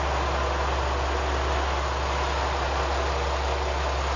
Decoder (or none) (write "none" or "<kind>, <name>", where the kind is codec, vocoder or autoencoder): none